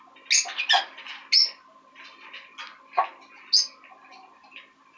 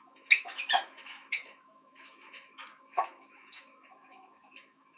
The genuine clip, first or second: first